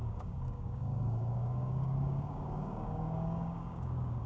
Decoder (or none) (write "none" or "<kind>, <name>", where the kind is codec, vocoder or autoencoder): codec, DAC